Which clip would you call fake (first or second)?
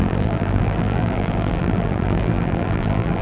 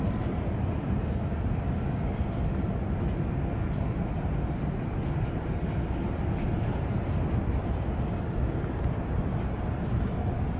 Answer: first